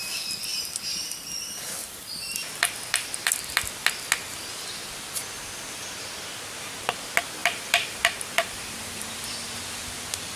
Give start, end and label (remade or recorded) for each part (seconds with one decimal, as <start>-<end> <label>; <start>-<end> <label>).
0.0-1.8 recorded; 1.8-3.7 remade; 3.7-7.4 recorded; 7.4-9.2 remade; 9.2-10.4 recorded